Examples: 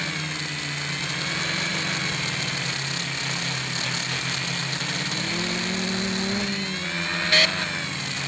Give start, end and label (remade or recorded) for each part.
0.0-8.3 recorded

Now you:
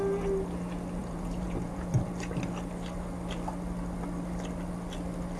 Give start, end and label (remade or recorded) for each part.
0.0-1.0 recorded; 1.0-1.9 remade; 1.9-5.4 recorded